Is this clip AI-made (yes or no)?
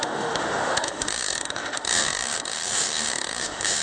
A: yes